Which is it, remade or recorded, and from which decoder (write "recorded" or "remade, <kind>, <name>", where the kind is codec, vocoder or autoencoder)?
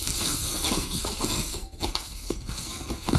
remade, codec, SNAC